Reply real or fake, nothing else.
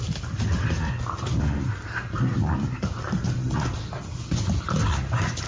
real